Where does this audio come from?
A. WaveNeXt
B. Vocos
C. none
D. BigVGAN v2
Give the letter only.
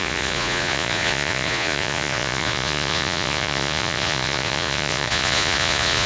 B